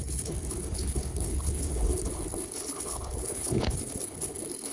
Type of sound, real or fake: fake